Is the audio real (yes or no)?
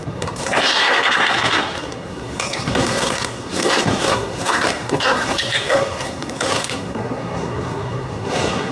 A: no